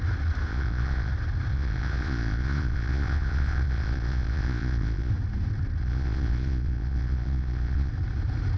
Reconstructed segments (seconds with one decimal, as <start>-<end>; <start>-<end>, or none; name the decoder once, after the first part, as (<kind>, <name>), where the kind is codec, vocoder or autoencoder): 0.5-1.1 (vocoder, Vocos); 1.5-5.1; 5.8-7.9